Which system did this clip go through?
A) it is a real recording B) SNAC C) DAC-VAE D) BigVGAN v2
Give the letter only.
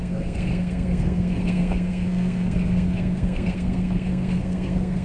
B